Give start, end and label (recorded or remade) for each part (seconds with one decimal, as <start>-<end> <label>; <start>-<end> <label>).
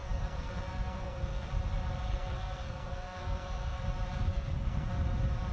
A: 0.0-1.5 remade; 1.5-2.1 recorded; 2.1-3.8 remade; 3.8-4.3 recorded; 4.3-4.9 remade; 4.9-5.5 recorded